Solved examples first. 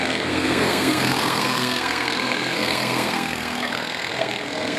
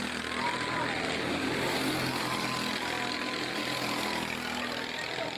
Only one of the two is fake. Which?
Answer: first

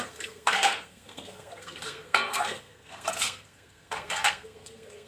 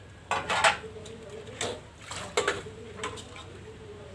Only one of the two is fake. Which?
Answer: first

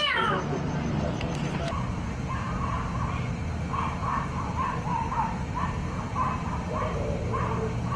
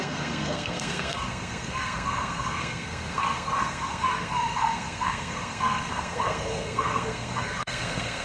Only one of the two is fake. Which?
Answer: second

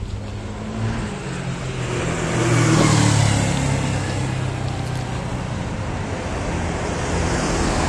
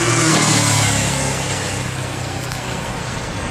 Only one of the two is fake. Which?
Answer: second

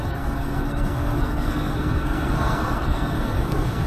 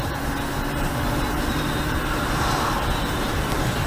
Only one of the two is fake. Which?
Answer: first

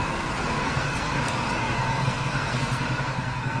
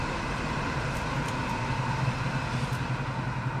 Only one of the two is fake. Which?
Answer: first